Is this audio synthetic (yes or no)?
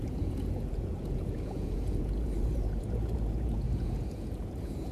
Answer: yes